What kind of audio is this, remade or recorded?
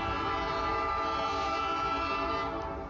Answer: recorded